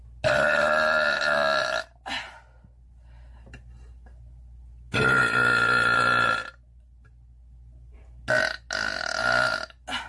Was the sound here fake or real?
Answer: real